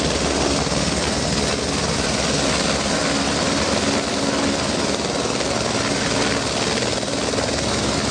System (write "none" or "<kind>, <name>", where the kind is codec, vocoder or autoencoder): none